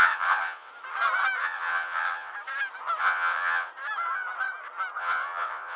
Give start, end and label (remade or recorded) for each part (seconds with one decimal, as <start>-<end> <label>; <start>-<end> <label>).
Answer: 0.0-0.7 remade; 0.7-1.4 recorded; 1.4-2.3 remade; 2.3-3.0 recorded; 3.0-3.7 remade; 3.7-5.0 recorded; 5.0-5.8 remade